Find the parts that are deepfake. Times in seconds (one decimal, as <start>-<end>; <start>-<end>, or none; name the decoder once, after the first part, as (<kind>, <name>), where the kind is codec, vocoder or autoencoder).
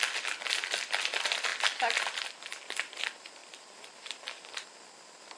3.4-4.8 (vocoder, BigVGAN v2)